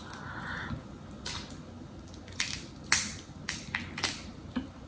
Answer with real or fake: real